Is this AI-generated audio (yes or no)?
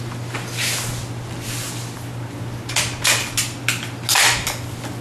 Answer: no